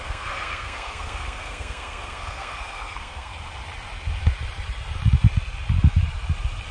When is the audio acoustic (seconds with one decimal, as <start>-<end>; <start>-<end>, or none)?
3.3-6.7

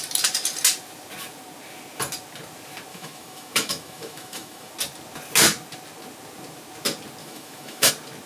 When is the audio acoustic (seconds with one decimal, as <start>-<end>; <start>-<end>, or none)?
0.0-2.9; 4.7-7.2; 7.9-8.3

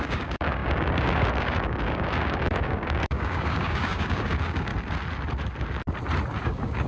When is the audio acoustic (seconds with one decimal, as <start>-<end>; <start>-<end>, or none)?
4.7-6.4

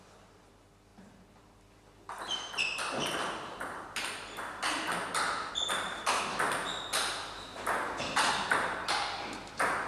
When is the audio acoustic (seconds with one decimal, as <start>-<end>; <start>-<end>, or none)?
0.0-9.9